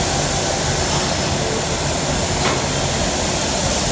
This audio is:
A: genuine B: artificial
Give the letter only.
A